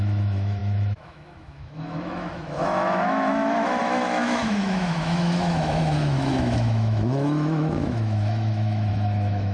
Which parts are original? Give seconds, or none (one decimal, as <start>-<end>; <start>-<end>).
none